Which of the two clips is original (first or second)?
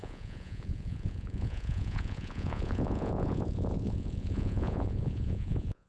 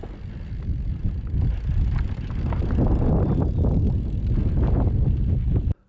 second